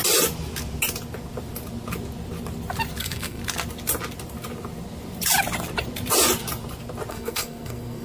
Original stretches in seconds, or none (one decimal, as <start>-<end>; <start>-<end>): 0.0-3.0; 3.4-7.1